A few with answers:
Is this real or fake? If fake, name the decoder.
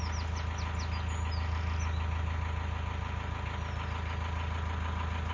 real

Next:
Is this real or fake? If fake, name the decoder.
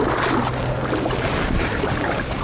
real